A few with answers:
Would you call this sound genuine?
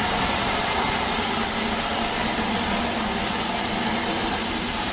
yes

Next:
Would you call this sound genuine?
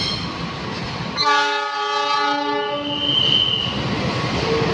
yes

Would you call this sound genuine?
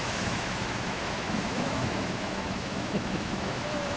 no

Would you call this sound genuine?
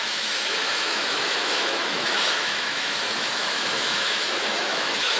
no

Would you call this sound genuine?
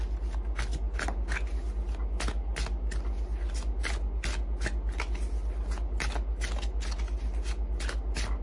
yes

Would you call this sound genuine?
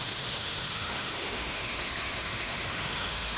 no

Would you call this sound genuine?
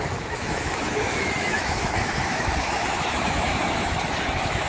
no